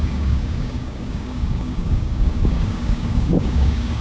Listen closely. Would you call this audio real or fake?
fake